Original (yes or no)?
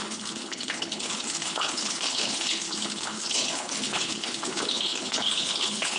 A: no